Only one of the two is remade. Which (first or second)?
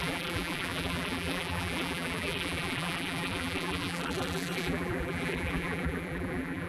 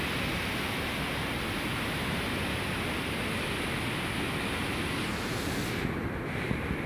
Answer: first